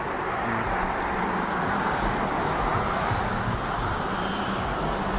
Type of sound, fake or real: real